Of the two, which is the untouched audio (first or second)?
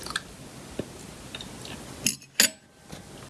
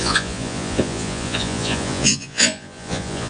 first